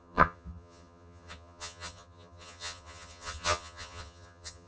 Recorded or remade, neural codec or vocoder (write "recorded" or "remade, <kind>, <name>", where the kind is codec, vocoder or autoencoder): remade, vocoder, HiFi-GAN